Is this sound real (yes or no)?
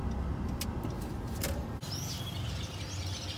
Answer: yes